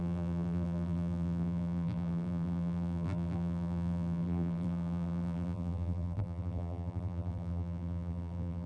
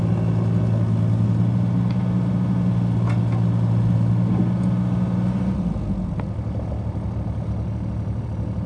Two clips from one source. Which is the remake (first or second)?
first